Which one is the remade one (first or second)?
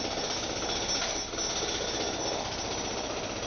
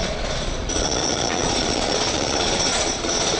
second